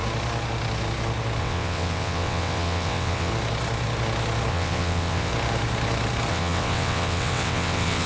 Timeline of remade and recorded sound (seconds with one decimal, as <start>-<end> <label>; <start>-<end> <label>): 0.0-1.4 recorded; 1.4-3.3 remade; 3.3-4.5 recorded; 4.5-5.3 remade; 5.3-6.3 recorded; 6.3-8.1 remade